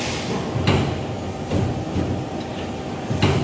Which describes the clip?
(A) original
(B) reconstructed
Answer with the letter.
A